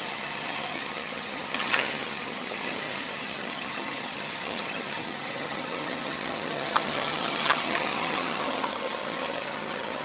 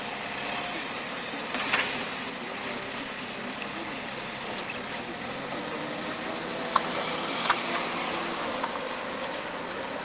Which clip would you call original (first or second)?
second